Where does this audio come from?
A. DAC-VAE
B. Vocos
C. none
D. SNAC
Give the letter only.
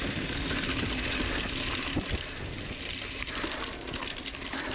C